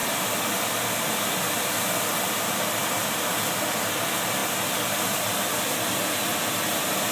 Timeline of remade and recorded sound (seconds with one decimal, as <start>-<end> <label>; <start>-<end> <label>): 0.0-7.1 recorded